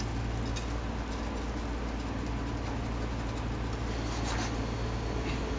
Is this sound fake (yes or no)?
no